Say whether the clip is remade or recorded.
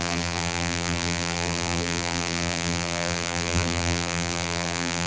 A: remade